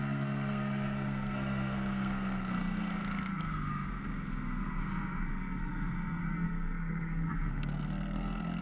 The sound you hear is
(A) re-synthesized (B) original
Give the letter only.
A